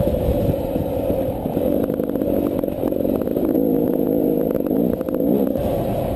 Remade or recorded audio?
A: remade